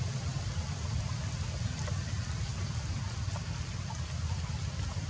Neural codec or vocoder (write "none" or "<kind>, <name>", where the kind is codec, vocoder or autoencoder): none